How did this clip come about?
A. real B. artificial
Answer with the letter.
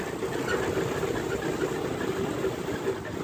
A